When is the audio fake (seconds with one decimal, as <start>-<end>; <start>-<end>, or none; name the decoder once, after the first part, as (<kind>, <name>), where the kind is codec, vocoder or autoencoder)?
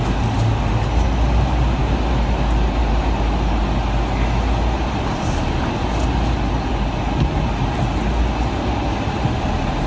none